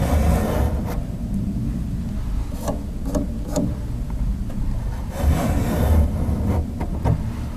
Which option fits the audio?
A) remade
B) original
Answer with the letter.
B